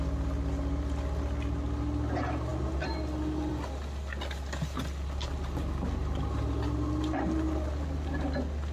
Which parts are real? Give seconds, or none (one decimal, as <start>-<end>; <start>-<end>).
0.0-8.7